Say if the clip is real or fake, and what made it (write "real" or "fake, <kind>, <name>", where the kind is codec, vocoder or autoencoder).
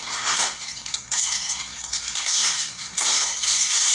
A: fake, codec, SNAC